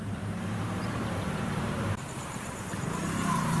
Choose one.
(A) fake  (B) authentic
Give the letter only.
A